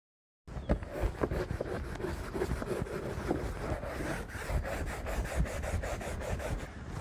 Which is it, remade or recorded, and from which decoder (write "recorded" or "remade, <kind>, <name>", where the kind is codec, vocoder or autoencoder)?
recorded